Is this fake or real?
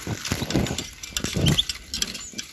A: real